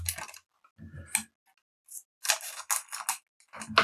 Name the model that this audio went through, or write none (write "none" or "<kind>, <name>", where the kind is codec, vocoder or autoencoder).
none